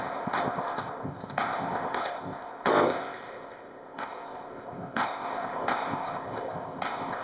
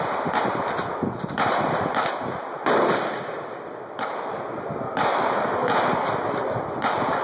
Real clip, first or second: second